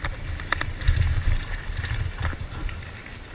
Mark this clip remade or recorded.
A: recorded